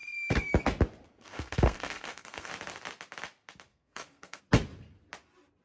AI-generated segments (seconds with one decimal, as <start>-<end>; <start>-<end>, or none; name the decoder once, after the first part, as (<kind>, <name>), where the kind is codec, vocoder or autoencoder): 0.0-0.5 (codec, SNAC); 1.1-2.5; 3.7-4.4